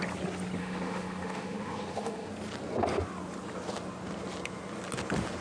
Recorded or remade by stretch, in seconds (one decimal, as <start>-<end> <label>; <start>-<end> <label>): 0.0-0.6 recorded; 0.6-2.3 remade; 2.3-5.4 recorded